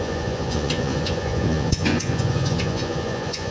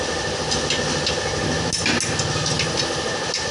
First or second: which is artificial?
first